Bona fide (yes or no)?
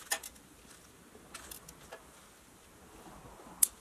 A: yes